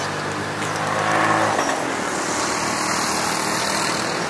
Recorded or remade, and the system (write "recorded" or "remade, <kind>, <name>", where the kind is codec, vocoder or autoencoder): recorded